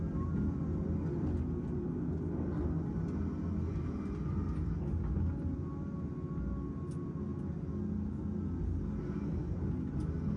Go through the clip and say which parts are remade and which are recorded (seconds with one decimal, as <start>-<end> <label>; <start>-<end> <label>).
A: 0.0-10.4 recorded